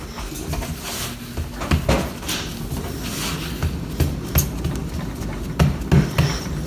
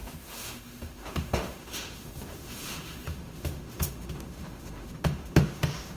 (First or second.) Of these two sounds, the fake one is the second